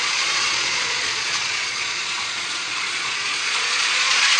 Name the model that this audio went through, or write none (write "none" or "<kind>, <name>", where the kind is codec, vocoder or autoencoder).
vocoder, Vocos